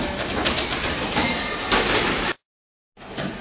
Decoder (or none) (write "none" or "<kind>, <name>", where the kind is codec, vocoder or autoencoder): none